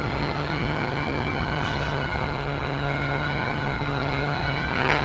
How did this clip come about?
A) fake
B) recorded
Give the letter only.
A